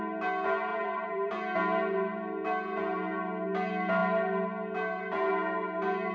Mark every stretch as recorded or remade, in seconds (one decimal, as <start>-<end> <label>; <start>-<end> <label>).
0.0-0.7 recorded; 0.7-1.3 remade; 1.3-6.1 recorded